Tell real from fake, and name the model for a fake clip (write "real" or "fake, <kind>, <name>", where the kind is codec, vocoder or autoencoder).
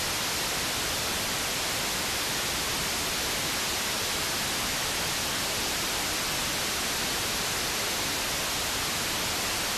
fake, vocoder, BigVGAN v2